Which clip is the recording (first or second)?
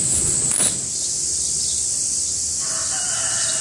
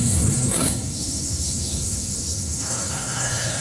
first